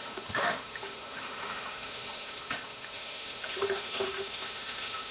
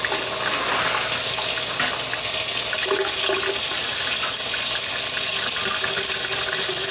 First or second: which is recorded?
second